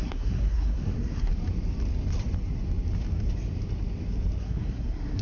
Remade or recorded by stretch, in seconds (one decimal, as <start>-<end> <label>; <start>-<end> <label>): 0.0-1.3 remade; 1.3-4.4 recorded; 4.4-5.2 remade